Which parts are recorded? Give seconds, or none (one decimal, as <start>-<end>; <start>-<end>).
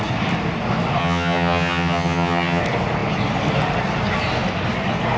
0.0-1.0; 2.6-5.2